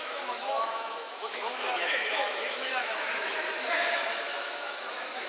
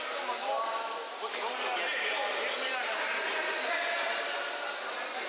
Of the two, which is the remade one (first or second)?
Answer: first